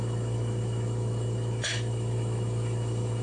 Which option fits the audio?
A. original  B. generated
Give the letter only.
B